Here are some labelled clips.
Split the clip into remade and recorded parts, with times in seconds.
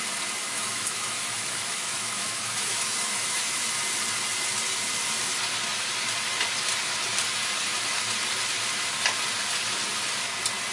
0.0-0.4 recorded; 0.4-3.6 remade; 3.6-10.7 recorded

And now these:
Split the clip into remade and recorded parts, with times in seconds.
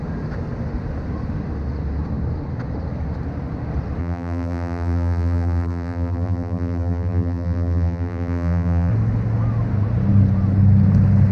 0.0-4.0 recorded; 4.0-8.9 remade; 8.9-11.3 recorded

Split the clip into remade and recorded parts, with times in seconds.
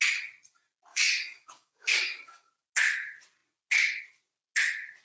0.0-0.9 recorded; 0.9-2.5 remade; 2.5-5.0 recorded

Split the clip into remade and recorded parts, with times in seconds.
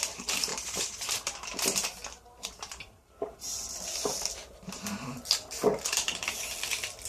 0.0-0.5 recorded; 0.5-4.8 remade; 4.8-5.7 recorded; 5.7-6.4 remade; 6.4-7.1 recorded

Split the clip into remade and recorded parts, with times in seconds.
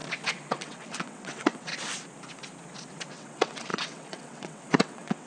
0.0-0.5 recorded; 0.5-1.7 remade; 1.7-3.1 recorded; 3.1-5.3 remade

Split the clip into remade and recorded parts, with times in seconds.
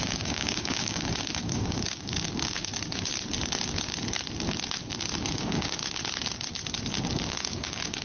0.0-2.7 remade; 2.7-5.2 recorded; 5.2-5.8 remade; 5.8-7.3 recorded; 7.3-8.0 remade